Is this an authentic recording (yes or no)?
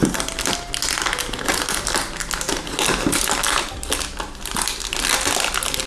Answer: yes